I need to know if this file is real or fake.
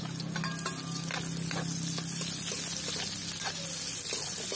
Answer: real